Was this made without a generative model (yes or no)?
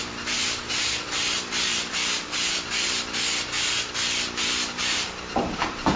no